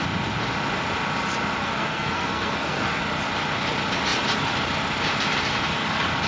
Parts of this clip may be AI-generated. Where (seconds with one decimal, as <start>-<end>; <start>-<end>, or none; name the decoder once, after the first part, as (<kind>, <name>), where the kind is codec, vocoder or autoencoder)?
1.6-3.0 (codec, SNAC)